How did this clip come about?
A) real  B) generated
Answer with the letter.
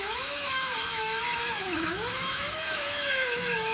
B